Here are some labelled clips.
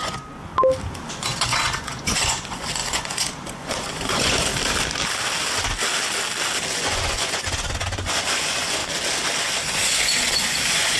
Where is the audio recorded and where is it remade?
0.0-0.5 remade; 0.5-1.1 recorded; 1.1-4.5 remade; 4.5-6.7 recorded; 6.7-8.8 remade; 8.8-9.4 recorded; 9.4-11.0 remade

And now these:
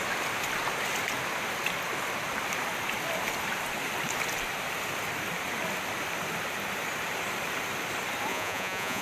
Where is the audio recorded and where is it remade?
0.0-8.3 recorded; 8.3-9.0 remade

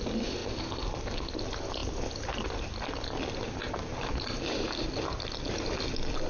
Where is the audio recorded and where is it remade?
0.0-6.3 recorded

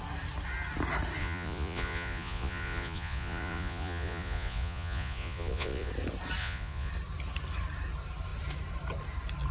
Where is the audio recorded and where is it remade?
0.0-1.2 recorded; 1.2-5.9 remade; 5.9-6.4 recorded; 6.4-6.9 remade; 6.9-9.5 recorded

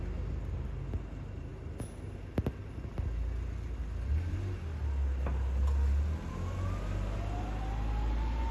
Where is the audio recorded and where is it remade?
0.0-8.5 recorded